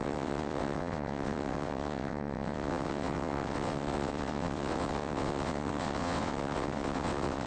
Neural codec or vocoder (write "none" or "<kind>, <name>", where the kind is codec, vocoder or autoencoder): vocoder, WaveNeXt